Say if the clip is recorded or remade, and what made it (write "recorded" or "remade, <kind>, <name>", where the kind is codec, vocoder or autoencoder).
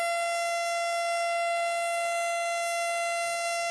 remade, autoencoder, DAC-VAE